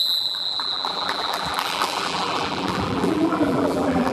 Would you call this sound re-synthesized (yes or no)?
yes